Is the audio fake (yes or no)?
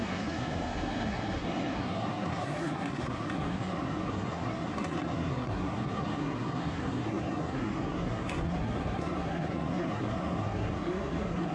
yes